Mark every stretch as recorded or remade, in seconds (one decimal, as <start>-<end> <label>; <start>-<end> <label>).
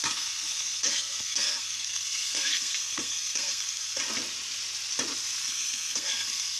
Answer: 0.0-4.0 remade; 4.0-5.4 recorded; 5.4-6.6 remade